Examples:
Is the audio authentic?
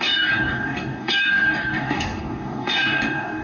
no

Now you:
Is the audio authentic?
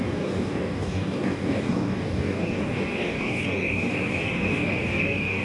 no